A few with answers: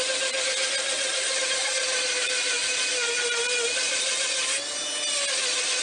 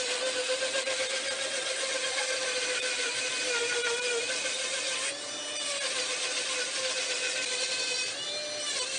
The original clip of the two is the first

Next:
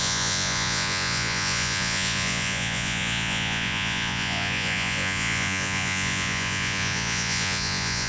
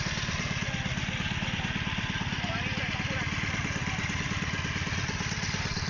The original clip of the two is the second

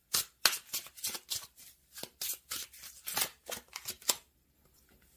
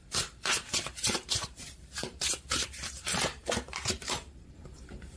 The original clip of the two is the first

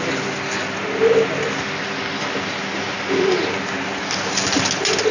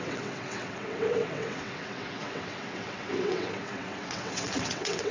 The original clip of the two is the first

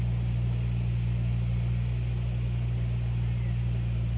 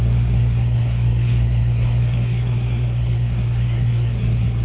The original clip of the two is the first